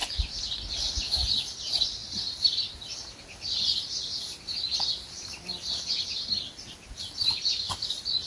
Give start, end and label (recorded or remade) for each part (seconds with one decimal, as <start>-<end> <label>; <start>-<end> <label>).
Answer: 0.0-1.6 recorded; 1.6-8.3 remade